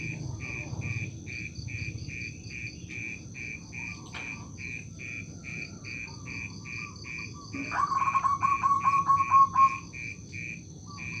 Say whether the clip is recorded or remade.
recorded